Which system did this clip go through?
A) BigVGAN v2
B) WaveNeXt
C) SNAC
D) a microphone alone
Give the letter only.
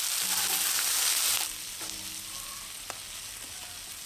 D